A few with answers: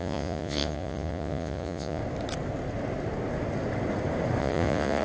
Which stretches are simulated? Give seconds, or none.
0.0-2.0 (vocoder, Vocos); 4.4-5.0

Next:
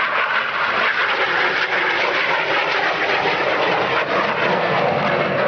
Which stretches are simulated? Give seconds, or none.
4.5-5.5 (codec, SNAC)

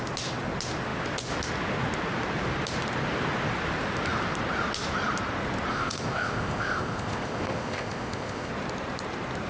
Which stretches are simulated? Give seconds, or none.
5.7-8.5 (codec, ZipCodec)

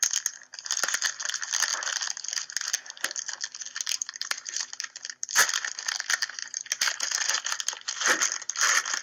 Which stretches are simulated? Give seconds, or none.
4.0-5.7 (vocoder, BigVGAN v2); 6.4-7.3